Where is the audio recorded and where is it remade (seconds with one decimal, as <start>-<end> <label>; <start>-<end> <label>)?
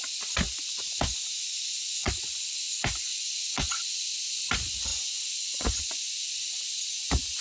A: 0.0-1.4 recorded; 1.4-2.1 remade; 2.1-3.1 recorded; 3.1-4.1 remade; 4.1-4.9 recorded; 4.9-5.8 remade; 5.8-7.4 recorded